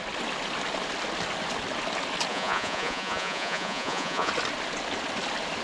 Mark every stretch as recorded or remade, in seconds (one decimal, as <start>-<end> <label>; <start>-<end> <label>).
0.0-2.3 recorded; 2.3-4.3 remade; 4.3-5.6 recorded